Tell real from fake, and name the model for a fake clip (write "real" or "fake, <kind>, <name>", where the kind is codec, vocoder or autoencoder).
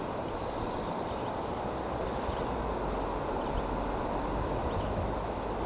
real